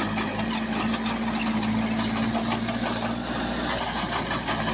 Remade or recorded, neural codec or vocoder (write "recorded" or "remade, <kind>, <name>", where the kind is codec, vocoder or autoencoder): recorded